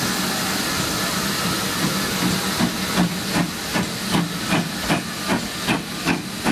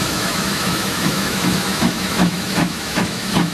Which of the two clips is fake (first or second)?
second